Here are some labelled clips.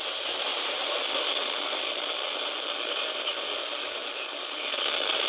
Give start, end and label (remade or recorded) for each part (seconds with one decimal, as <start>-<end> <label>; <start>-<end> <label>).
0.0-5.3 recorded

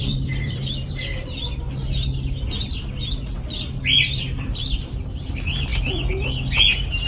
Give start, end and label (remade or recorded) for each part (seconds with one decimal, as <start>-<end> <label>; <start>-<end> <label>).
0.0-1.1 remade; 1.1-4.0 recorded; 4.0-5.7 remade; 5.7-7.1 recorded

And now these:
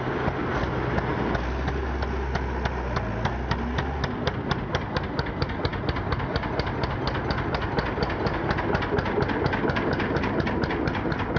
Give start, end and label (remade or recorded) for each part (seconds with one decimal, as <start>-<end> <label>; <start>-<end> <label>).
0.0-11.4 recorded

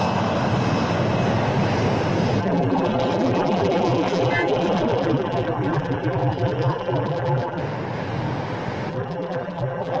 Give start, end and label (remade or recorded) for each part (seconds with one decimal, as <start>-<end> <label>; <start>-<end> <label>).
0.0-2.4 recorded; 2.4-7.6 remade; 7.6-8.9 recorded; 8.9-10.0 remade

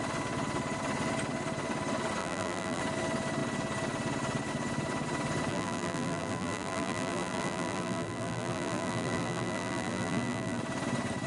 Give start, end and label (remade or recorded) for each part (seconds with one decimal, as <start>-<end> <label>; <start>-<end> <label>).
0.0-2.2 recorded; 2.2-2.8 remade; 2.8-5.5 recorded; 5.5-10.6 remade; 10.6-11.3 recorded

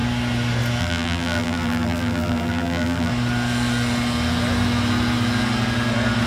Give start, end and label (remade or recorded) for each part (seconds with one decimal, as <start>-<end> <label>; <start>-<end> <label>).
0.0-0.8 recorded; 0.8-3.1 remade; 3.1-6.3 recorded

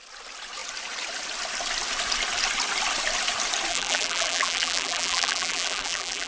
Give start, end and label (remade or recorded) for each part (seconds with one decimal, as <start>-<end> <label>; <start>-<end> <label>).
0.0-3.7 recorded; 3.7-6.3 remade